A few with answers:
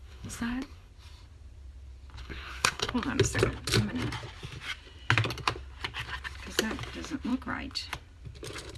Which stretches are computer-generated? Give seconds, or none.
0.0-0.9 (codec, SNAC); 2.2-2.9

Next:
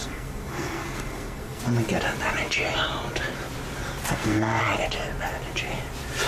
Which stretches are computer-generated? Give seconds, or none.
0.0-1.6 (codec, SNAC); 4.1-4.6

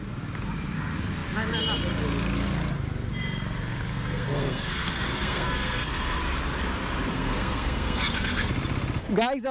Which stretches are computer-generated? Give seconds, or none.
3.9-6.2 (codec, SNAC); 7.1-8.5